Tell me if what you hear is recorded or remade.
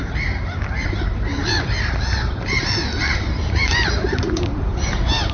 remade